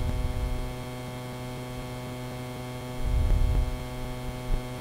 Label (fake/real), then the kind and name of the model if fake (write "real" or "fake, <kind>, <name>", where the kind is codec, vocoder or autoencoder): real